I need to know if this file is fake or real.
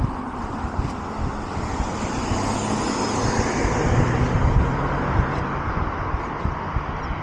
real